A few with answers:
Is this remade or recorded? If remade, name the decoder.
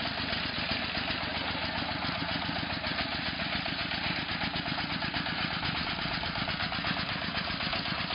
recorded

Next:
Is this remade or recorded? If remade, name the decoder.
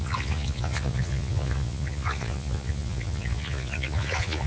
remade, vocoder, Vocos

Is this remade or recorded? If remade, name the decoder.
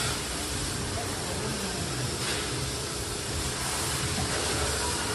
remade, vocoder, BigVGAN v2